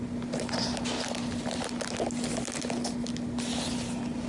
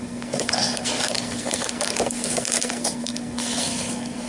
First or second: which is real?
first